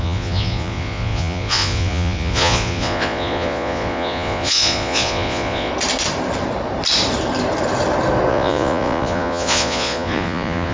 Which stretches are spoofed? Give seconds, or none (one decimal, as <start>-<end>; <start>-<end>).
0.0-5.7; 8.3-10.7